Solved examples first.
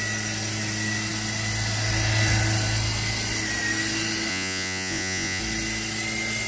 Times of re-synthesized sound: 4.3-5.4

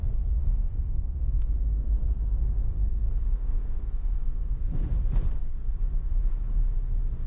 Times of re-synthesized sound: 0.4-4.7

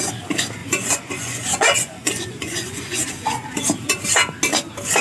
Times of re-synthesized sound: 0.6-3.6

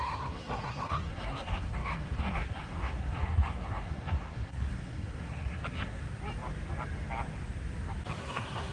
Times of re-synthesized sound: 0.0-6.0; 8.2-8.7

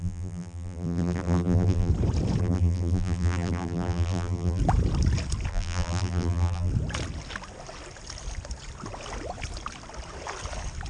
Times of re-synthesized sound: 0.0-1.9; 2.4-4.6; 5.5-6.7

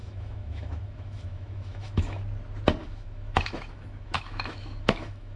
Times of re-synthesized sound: 0.0-2.2; 2.8-5.4

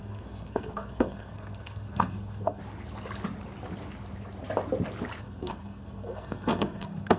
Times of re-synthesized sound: 0.0-2.6; 5.2-7.2